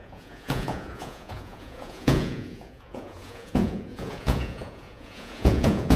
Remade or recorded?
remade